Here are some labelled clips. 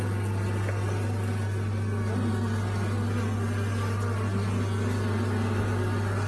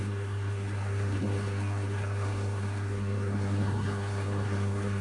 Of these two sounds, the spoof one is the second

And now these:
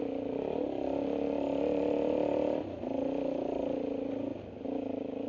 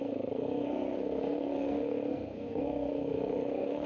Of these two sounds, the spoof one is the second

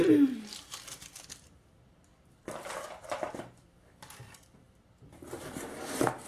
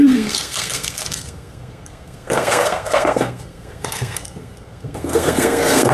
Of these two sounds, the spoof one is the second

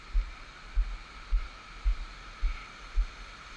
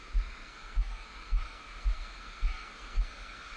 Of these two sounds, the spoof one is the second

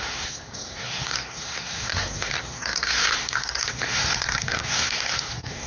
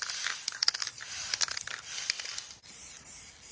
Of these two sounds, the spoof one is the first